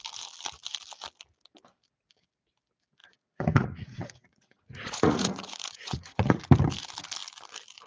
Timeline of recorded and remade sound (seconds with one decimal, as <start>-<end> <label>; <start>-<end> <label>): 0.0-3.0 recorded; 3.0-6.4 remade; 6.4-7.9 recorded

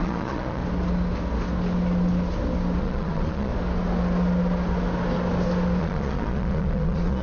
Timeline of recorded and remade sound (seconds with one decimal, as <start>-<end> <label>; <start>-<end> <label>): 0.0-0.6 remade; 0.6-2.8 recorded; 2.8-3.5 remade; 3.5-5.8 recorded; 5.8-7.2 remade